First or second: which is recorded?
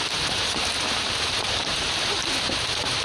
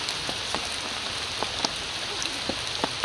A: second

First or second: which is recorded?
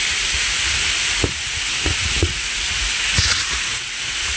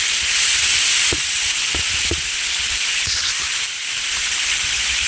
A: second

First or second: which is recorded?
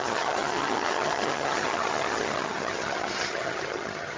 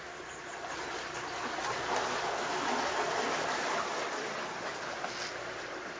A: second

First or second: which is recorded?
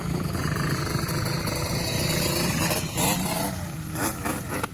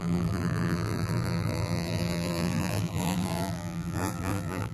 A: first